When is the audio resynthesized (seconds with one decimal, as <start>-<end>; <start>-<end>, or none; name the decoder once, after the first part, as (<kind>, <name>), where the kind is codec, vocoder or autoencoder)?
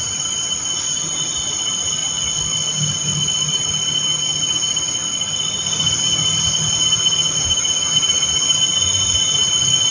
none